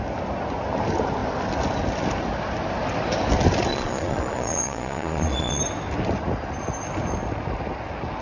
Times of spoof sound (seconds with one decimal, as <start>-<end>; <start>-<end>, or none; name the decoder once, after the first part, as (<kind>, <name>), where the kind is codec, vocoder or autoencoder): 3.7-5.6 (vocoder, Vocos)